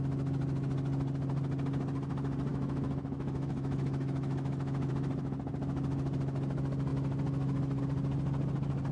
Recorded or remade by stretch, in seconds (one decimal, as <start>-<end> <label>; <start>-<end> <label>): 0.0-2.5 recorded; 2.5-4.9 remade; 4.9-8.9 recorded